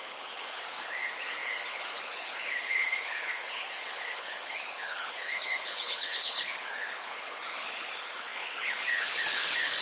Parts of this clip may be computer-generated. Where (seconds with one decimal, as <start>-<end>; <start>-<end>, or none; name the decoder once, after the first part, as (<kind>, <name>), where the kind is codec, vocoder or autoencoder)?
0.0-9.8 (codec, HILCodec)